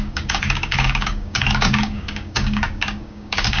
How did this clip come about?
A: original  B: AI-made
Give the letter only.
B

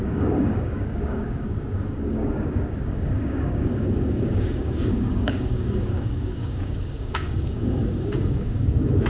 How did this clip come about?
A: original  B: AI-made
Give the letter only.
B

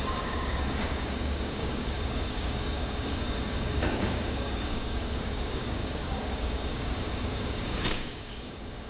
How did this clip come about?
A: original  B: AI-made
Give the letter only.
B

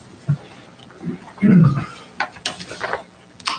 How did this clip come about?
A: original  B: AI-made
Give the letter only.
A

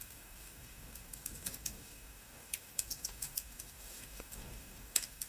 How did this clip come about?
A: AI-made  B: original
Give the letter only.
A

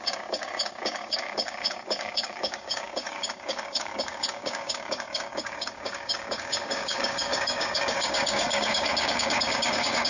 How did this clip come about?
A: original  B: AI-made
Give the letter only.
B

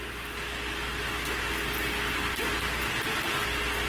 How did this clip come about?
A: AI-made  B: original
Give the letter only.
B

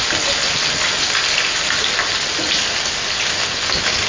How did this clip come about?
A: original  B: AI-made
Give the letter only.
A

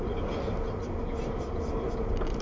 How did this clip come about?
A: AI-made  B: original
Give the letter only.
B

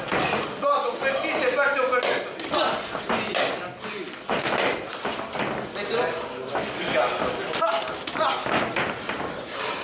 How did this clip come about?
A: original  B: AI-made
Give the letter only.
A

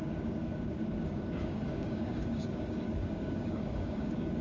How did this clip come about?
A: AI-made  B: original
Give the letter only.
A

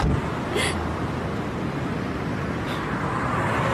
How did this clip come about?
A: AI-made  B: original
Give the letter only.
B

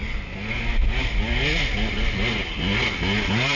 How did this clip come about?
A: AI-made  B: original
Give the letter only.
B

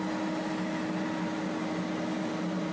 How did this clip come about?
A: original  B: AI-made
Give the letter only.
A